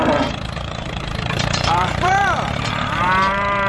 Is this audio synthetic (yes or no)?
yes